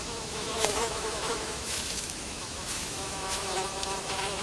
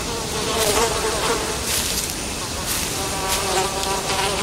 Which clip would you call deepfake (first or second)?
first